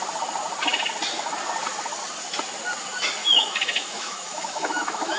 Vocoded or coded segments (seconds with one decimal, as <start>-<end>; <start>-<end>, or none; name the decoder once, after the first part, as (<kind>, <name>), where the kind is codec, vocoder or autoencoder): 3.2-5.2 (autoencoder, DAC-VAE)